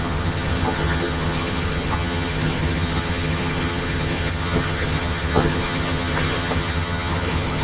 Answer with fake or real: fake